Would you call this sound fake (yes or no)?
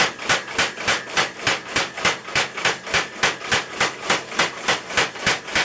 no